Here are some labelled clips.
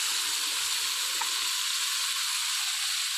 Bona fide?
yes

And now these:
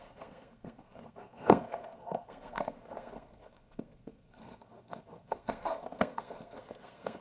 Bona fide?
no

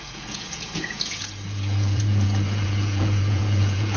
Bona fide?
no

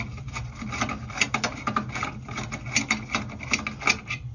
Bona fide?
yes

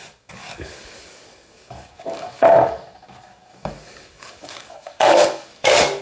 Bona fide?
no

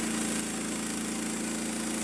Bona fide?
yes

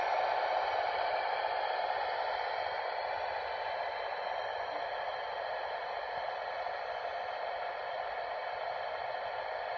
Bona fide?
yes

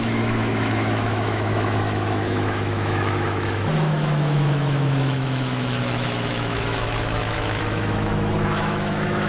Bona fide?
no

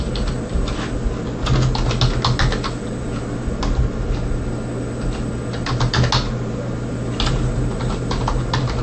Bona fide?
yes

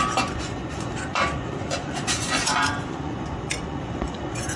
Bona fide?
no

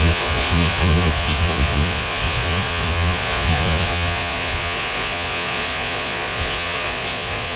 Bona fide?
no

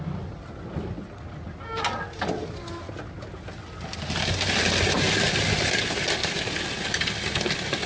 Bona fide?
yes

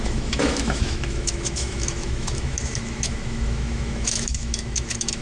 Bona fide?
no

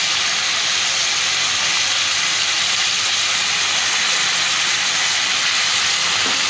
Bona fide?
yes